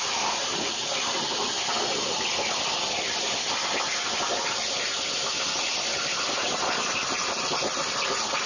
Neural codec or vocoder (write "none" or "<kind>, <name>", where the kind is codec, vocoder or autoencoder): none